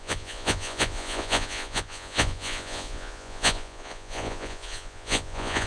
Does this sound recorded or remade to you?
remade